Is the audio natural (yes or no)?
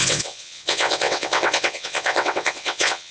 no